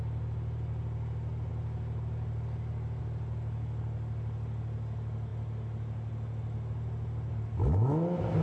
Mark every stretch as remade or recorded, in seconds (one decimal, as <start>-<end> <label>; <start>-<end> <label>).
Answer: 0.0-8.4 recorded